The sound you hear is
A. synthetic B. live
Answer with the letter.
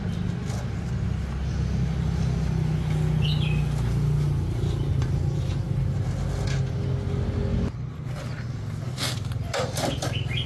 B